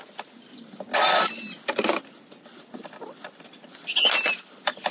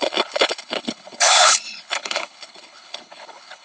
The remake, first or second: second